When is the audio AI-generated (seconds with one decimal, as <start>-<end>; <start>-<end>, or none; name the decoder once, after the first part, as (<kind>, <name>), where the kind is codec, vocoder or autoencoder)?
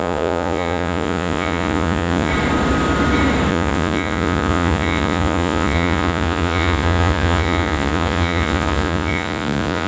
0.0-2.3 (vocoder, Vocos); 3.5-9.9